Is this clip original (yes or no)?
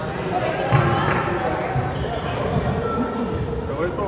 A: yes